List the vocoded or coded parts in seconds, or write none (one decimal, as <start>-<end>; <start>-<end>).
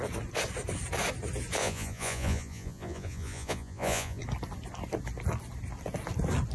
1.6-4.2